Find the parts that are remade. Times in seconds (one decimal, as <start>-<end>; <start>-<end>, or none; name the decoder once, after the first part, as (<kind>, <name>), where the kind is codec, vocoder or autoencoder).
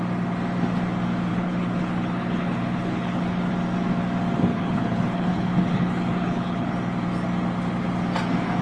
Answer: 1.3-3.5 (codec, HILCodec); 4.5-6.7